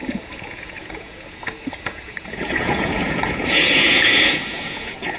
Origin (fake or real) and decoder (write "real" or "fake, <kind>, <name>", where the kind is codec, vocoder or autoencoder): fake, vocoder, Vocos